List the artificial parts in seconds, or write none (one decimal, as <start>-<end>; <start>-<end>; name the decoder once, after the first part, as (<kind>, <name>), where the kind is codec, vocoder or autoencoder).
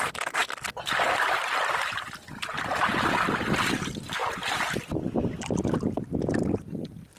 none